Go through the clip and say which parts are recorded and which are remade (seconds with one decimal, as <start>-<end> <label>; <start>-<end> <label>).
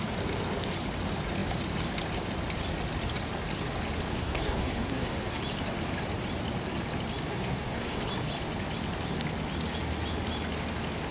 0.0-4.1 recorded; 4.1-5.4 remade; 5.4-7.3 recorded; 7.3-8.0 remade; 8.0-11.1 recorded